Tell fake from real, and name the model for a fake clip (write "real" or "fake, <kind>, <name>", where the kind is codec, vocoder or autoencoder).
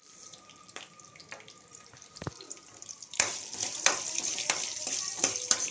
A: fake, vocoder, BigVGAN v2